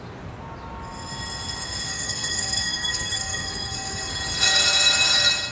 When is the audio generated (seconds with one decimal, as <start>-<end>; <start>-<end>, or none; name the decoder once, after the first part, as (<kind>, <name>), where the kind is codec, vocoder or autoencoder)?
1.9-4.1 (codec, SNAC)